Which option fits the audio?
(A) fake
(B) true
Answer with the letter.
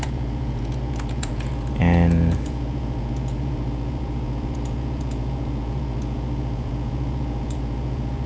A